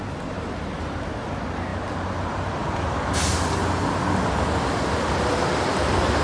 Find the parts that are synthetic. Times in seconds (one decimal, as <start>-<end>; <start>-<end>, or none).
none

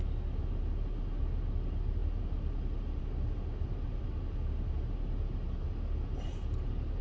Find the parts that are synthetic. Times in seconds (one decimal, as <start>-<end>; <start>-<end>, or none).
none